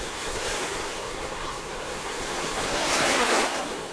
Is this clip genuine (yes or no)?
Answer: no